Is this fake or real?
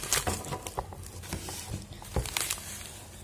real